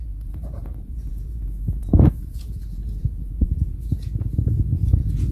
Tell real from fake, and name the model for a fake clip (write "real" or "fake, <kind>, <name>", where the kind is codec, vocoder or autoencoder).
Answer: fake, vocoder, Vocos